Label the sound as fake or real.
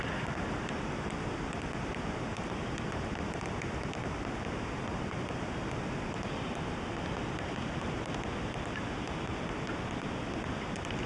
real